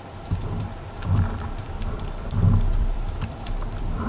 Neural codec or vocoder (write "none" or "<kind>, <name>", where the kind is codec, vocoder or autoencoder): vocoder, BigVGAN v2